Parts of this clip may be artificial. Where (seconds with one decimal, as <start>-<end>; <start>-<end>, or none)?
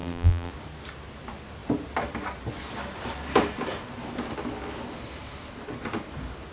0.0-0.5